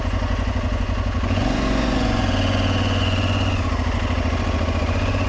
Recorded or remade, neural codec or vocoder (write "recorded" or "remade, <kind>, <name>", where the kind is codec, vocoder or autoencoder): remade, vocoder, Vocos